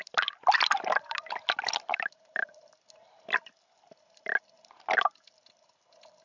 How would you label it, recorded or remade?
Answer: remade